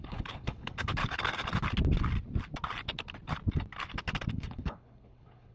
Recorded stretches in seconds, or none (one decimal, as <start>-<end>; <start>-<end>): 1.0-4.3